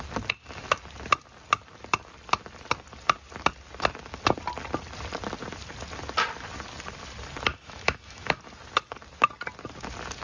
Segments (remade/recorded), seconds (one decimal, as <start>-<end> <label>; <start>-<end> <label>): 0.0-7.5 recorded; 7.5-8.4 remade; 8.4-10.2 recorded